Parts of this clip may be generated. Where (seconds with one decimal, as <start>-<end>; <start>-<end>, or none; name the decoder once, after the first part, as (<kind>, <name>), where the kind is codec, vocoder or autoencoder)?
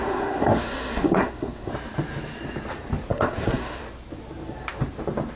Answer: 0.0-1.7 (codec, SNAC); 3.1-3.8